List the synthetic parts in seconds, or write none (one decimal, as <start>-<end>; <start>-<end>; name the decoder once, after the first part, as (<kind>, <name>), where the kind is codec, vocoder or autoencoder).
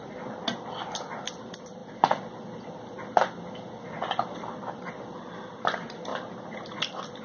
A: 1.8-2.4 (vocoder, BigVGAN v2)